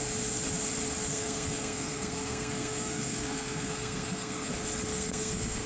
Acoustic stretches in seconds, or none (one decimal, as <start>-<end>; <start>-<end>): 0.0-1.1; 4.5-4.9